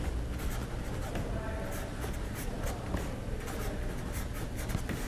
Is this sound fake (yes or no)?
no